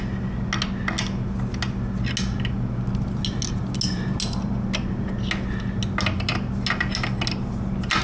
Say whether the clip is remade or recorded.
recorded